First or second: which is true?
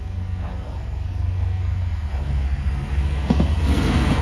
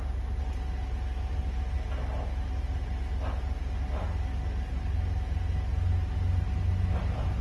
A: second